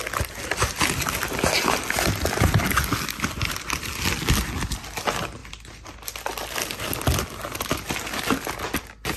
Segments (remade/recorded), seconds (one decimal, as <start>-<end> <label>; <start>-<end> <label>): 0.0-5.4 recorded; 5.4-6.6 remade; 6.6-9.2 recorded